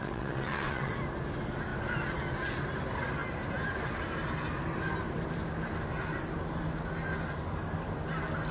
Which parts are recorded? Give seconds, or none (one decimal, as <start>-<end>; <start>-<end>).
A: 0.9-8.5